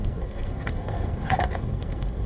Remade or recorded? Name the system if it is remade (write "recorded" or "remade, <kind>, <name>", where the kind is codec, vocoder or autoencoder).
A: remade, codec, SNAC